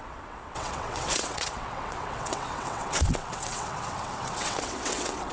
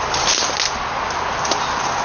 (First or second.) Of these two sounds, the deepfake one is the first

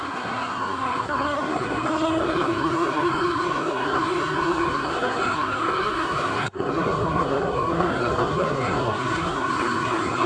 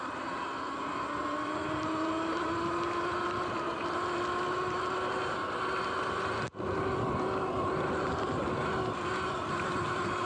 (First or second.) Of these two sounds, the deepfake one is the first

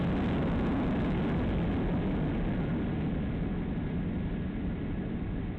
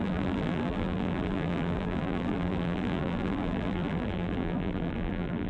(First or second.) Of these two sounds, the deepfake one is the second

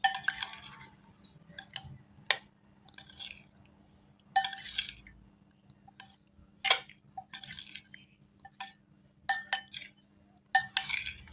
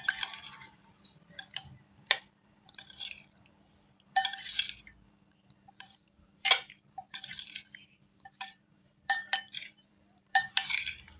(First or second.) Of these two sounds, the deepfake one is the second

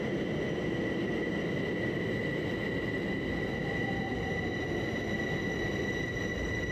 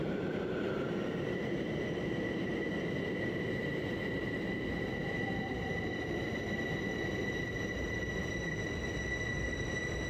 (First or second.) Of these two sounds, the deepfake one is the second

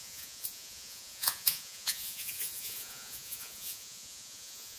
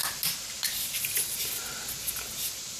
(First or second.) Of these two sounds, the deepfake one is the first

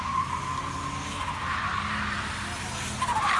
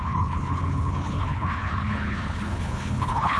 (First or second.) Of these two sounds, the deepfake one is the second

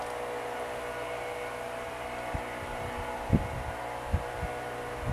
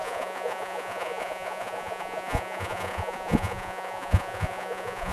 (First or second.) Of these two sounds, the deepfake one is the second